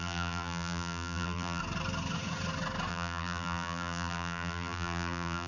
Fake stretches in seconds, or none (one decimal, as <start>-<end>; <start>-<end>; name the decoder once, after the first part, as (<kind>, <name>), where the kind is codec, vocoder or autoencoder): 0.0-1.6 (vocoder, BigVGAN v2); 2.9-5.5